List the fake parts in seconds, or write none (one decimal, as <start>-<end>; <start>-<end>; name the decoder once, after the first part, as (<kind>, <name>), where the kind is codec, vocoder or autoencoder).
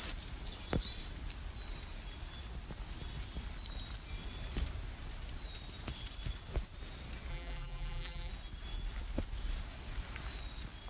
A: 7.3-8.3 (vocoder, BigVGAN v2)